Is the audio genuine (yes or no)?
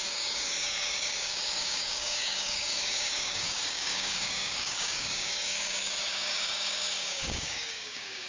no